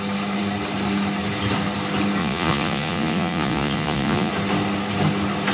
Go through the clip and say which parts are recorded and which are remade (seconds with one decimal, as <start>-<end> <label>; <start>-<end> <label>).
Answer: 0.0-2.2 recorded; 2.2-4.3 remade; 4.3-5.5 recorded